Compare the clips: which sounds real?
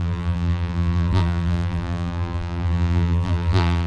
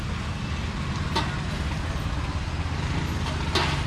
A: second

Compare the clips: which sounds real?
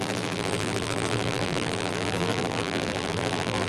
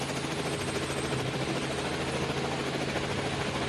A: second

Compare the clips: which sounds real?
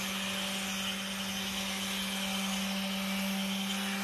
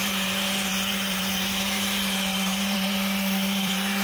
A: first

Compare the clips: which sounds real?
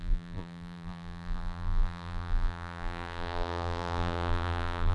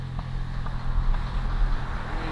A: second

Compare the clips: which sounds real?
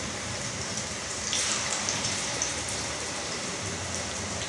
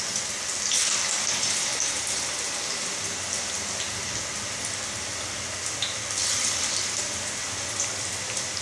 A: second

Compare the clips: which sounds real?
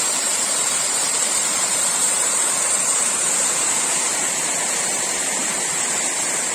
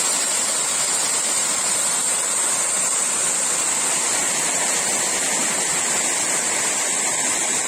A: second